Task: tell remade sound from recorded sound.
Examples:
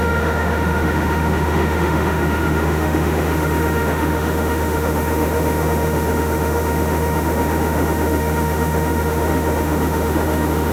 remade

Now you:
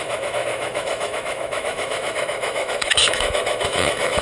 remade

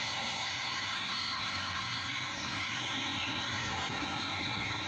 remade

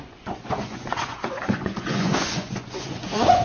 remade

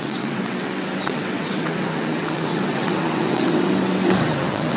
remade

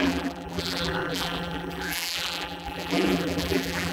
remade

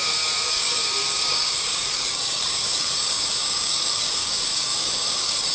remade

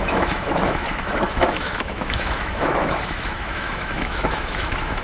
remade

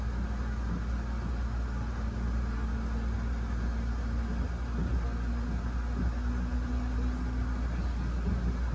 recorded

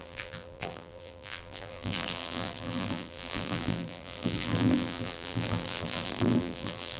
remade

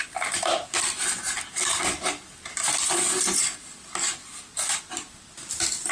recorded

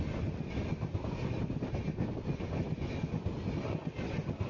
recorded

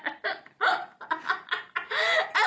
recorded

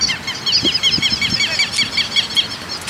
recorded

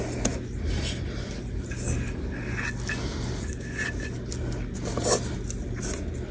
recorded